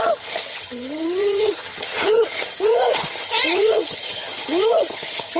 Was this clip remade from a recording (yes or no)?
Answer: yes